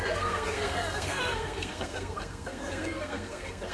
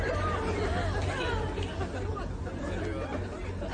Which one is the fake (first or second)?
first